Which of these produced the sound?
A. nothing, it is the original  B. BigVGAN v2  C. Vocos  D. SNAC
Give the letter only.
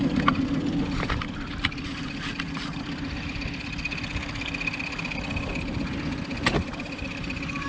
A